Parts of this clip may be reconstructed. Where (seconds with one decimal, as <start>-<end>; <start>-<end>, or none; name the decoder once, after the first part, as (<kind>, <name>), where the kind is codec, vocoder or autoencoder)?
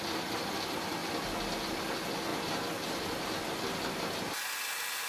2.3-3.6 (vocoder, BigVGAN v2)